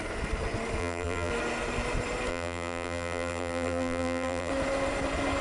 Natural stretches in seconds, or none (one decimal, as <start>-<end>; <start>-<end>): 0.0-0.8; 1.3-2.3; 4.5-5.4